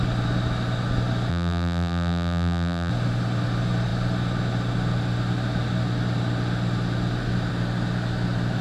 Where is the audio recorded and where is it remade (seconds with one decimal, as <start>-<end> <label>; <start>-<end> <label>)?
0.0-1.3 recorded; 1.3-2.9 remade; 2.9-8.6 recorded